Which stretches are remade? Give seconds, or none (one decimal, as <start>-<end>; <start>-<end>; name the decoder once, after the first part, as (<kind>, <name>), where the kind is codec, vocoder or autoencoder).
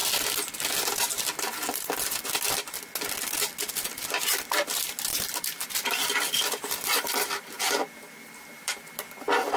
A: 3.7-9.6 (vocoder, BigVGAN v2)